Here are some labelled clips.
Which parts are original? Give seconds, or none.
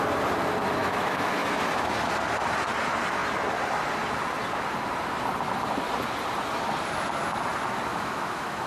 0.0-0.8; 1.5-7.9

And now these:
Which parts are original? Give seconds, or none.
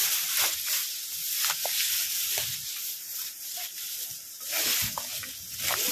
0.0-5.9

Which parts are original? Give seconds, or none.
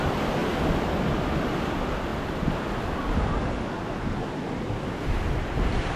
0.0-6.0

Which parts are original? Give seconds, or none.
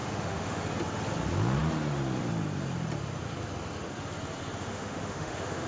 0.6-4.6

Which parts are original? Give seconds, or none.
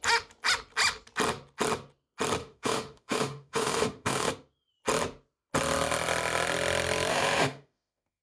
0.0-2.4; 4.3-7.1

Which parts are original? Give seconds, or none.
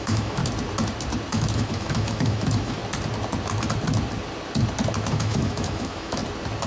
0.4-1.3; 2.8-5.1; 6.2-6.7